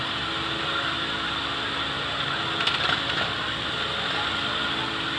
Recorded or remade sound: recorded